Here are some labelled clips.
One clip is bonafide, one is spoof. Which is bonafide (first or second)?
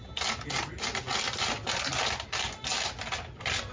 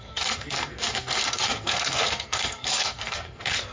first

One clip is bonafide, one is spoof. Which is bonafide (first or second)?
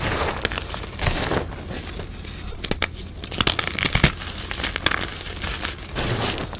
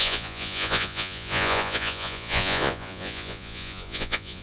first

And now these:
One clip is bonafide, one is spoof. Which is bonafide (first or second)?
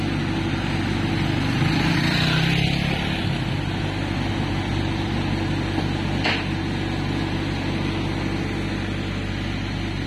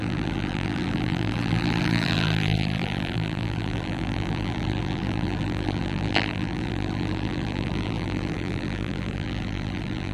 first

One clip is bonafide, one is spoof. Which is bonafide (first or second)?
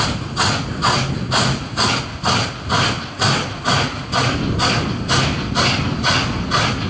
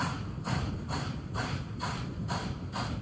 first